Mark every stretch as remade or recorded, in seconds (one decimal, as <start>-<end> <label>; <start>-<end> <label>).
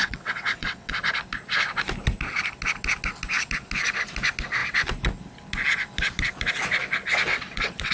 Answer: 0.0-0.9 remade; 0.9-7.3 recorded; 7.3-7.9 remade